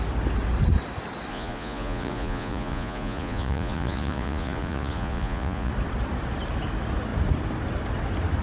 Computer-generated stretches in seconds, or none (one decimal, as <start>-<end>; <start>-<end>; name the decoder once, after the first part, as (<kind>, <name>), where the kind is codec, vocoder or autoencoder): 1.3-5.7 (vocoder, Vocos)